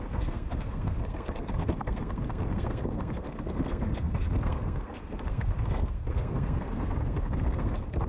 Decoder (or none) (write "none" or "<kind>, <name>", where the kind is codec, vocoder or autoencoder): codec, SNAC